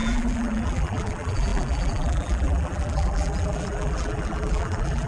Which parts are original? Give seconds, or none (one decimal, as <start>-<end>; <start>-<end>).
none